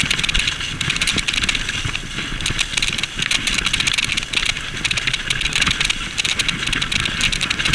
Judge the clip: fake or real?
real